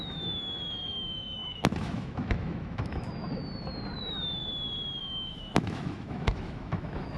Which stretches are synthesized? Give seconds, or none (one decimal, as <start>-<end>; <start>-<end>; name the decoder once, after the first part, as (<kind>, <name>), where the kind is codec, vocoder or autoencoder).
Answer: 0.0-3.4 (autoencoder, DAC-VAE); 4.0-4.4; 5.0-7.2